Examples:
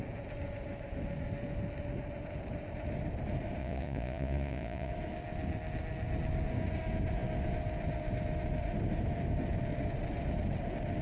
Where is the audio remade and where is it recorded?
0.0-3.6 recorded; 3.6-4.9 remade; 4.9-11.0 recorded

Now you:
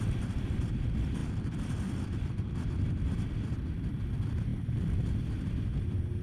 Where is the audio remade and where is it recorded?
0.0-6.2 recorded

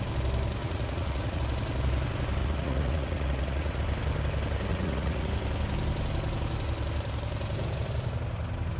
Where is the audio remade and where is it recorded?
0.0-0.6 recorded; 0.6-1.4 remade; 1.4-2.4 recorded; 2.4-3.8 remade; 3.8-4.7 recorded; 4.7-5.3 remade; 5.3-8.8 recorded

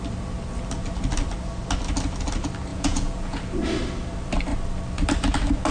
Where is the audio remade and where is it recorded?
0.0-2.7 recorded; 2.7-3.4 remade; 3.4-5.7 recorded

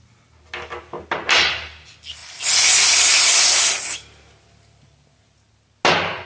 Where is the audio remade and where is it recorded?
0.0-6.3 recorded

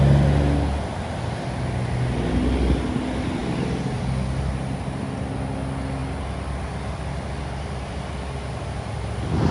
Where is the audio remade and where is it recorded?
0.0-9.5 recorded

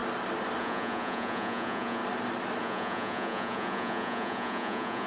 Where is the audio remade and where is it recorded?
0.0-0.6 recorded; 0.6-2.0 remade; 2.0-2.6 recorded; 2.6-5.1 remade